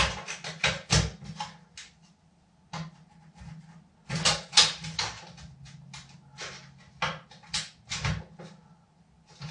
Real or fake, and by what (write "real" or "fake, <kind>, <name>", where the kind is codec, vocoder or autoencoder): real